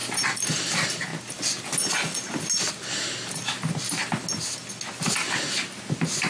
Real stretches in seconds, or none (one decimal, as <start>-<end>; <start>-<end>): 0.0-0.5; 1.1-2.7; 4.0-5.0